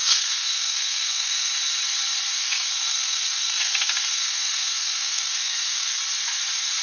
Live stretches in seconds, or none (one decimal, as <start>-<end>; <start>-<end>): 1.5-2.4; 6.0-6.8